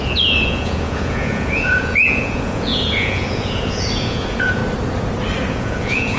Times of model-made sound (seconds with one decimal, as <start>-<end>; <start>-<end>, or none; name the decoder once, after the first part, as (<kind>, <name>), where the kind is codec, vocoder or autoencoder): 0.0-4.6 (vocoder, Vocos); 5.5-6.2